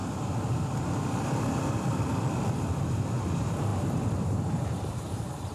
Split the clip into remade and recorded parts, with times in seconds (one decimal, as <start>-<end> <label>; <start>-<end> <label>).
0.0-3.3 recorded; 3.3-5.5 remade